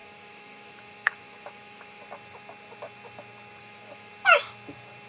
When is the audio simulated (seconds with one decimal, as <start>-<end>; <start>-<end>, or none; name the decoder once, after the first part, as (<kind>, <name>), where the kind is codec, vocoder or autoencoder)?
0.0-2.0 (autoencoder, DAC-VAE); 3.6-4.1